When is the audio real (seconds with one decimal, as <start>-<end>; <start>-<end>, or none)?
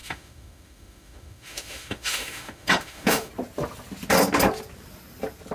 3.3-5.5